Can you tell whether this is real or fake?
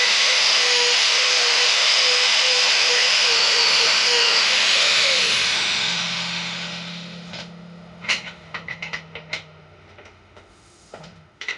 fake